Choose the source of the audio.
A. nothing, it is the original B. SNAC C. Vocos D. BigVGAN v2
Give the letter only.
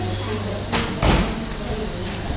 A